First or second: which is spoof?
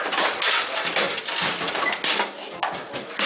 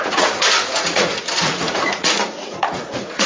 second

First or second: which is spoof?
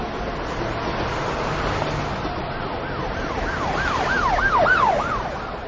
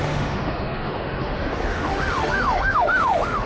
second